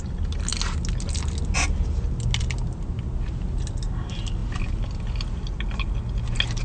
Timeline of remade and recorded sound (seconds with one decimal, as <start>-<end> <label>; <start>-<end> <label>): 0.0-6.6 recorded